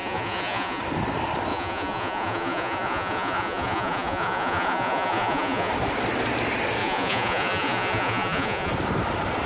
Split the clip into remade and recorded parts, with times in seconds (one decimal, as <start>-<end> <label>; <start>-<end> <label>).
0.0-0.8 remade; 0.8-1.5 recorded; 1.5-5.7 remade; 5.7-6.8 recorded; 6.8-8.7 remade; 8.7-9.5 recorded